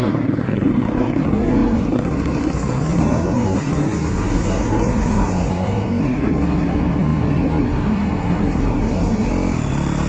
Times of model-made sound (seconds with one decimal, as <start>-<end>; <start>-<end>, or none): 0.0-9.3